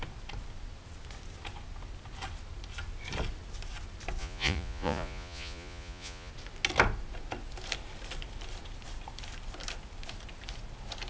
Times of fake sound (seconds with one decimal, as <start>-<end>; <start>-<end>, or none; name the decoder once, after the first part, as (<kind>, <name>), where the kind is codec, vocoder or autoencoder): 4.2-6.3 (vocoder, Vocos)